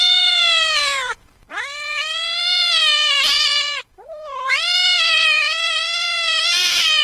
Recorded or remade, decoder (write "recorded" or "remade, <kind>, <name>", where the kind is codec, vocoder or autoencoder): remade, vocoder, Vocos